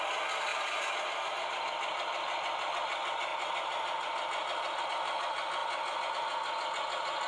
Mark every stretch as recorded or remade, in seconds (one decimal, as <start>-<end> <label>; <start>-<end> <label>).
0.0-0.5 recorded; 0.5-1.0 remade; 1.0-7.3 recorded